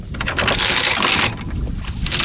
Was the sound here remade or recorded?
recorded